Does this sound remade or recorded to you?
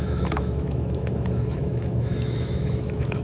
remade